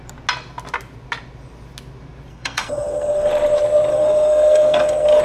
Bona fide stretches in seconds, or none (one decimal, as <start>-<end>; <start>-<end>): 0.0-2.3; 3.3-3.9